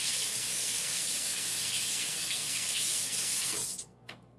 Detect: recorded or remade remade